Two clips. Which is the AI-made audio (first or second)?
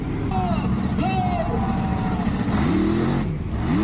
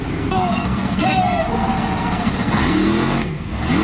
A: second